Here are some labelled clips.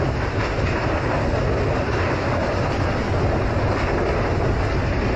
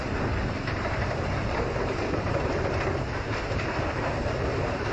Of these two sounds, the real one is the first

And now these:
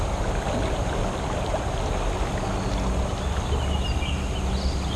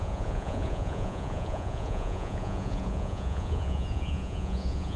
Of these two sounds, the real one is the first